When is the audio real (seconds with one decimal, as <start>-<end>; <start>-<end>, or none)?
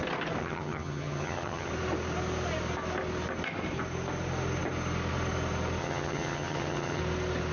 0.0-0.4; 1.7-5.8; 7.0-7.5